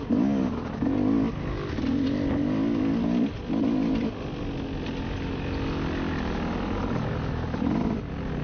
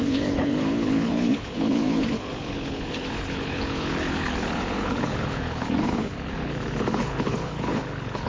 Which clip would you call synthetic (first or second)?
second